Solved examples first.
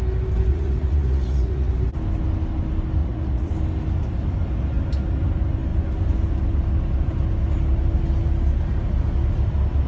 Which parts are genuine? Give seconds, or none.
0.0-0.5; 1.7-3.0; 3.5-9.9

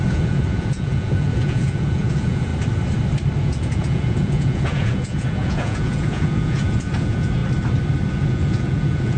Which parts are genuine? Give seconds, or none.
2.5-3.4; 7.4-8.1

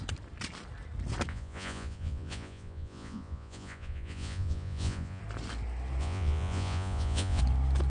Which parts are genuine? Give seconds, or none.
0.0-1.3; 5.2-6.0; 7.4-7.9

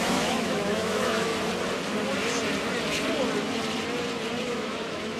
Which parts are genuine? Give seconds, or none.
1.3-4.4

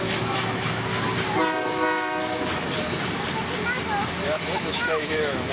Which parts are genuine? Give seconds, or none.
0.9-4.2

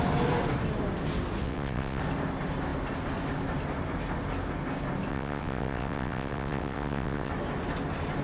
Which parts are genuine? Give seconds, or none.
0.0-1.4; 2.0-5.1; 7.3-8.2

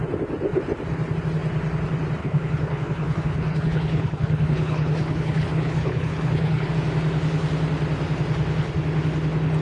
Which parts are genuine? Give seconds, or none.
0.0-2.2; 6.7-9.6

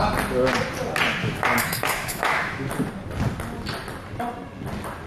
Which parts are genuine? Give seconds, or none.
0.0-1.2; 2.7-5.1